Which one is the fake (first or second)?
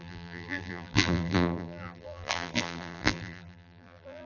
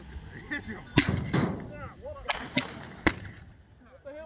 first